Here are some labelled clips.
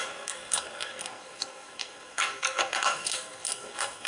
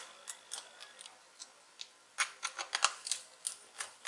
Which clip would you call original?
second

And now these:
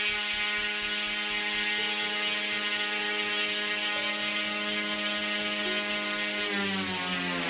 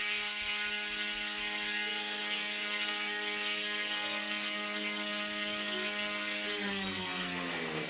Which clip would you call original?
first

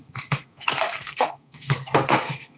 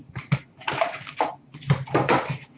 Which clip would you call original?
second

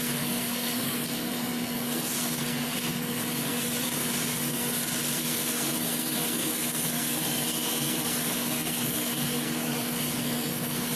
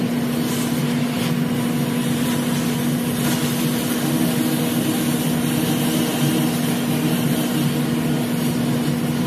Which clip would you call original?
second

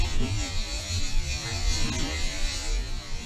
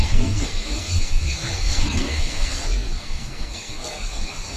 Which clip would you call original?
first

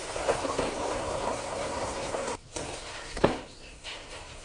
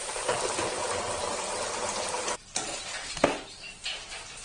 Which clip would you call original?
second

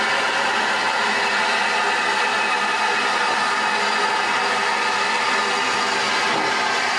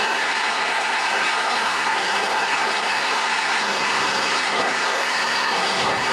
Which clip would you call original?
first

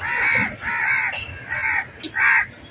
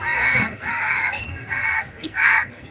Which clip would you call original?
first